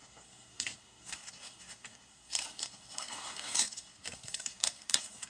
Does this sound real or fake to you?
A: fake